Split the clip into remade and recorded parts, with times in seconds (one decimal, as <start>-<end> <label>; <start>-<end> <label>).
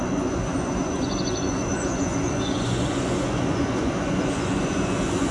0.0-5.3 remade